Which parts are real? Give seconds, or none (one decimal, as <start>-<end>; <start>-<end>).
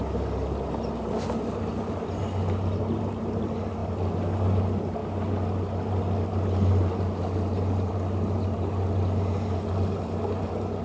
0.0-10.8